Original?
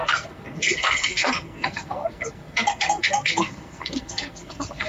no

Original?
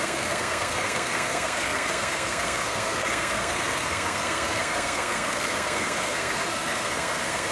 no